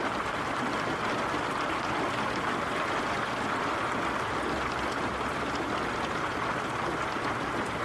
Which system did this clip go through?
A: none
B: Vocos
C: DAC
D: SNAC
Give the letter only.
A